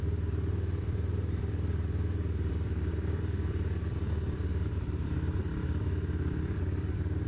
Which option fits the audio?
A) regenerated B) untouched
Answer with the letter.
A